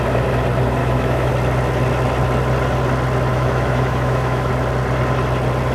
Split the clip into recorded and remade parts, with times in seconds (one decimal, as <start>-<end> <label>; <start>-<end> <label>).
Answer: 0.0-0.8 recorded; 0.8-1.3 remade; 1.3-3.3 recorded; 3.3-4.5 remade; 4.5-5.7 recorded